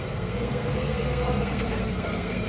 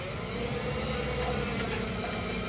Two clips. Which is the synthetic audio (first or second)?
first